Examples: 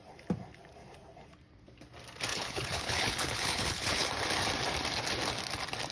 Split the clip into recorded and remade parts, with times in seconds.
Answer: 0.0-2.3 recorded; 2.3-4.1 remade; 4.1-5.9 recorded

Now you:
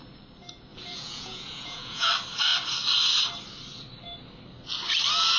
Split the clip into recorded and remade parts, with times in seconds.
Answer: 0.0-0.7 recorded; 0.7-2.1 remade; 2.1-5.4 recorded

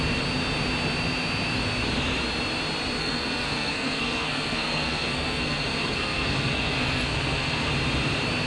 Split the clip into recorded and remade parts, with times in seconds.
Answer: 0.0-3.0 recorded; 3.0-7.7 remade; 7.7-8.5 recorded

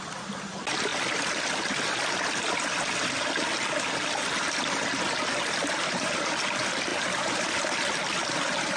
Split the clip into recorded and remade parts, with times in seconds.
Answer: 0.0-8.8 recorded

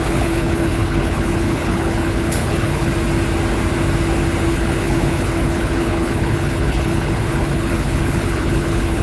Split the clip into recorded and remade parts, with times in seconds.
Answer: 0.0-2.9 remade; 2.9-4.5 recorded; 4.5-9.0 remade

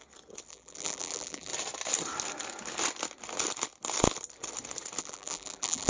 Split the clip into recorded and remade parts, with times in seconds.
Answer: 0.0-0.5 recorded; 0.5-1.5 remade; 1.5-5.0 recorded; 5.0-5.9 remade